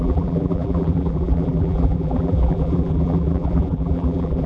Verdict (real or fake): fake